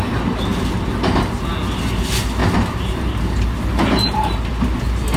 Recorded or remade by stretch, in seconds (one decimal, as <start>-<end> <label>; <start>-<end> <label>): 0.0-2.4 recorded; 2.4-3.2 remade; 3.2-3.7 recorded; 3.7-4.5 remade; 4.5-5.2 recorded

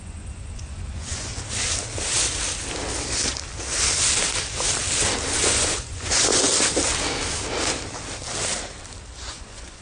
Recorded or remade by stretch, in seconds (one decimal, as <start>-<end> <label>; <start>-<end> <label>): 0.0-1.3 remade; 1.3-5.3 recorded; 5.3-6.3 remade; 6.3-9.2 recorded; 9.2-9.8 remade

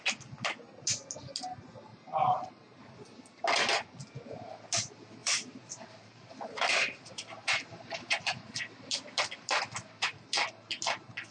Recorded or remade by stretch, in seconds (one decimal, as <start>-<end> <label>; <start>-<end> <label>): 0.0-1.9 recorded; 1.9-2.5 remade; 2.5-5.2 recorded; 5.2-8.6 remade; 8.6-11.3 recorded

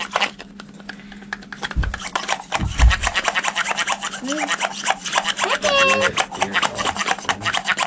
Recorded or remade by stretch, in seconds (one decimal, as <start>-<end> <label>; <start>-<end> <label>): 0.0-2.6 recorded; 2.6-3.3 remade; 3.3-7.9 recorded

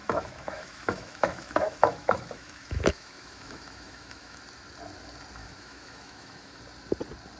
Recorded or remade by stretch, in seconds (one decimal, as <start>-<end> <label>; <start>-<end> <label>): 0.0-4.4 remade; 4.4-5.4 recorded; 5.4-6.6 remade; 6.6-7.4 recorded

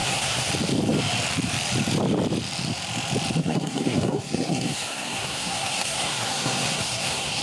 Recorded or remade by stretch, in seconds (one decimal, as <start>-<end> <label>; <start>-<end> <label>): 0.0-0.5 remade; 0.5-3.4 recorded; 3.4-7.4 remade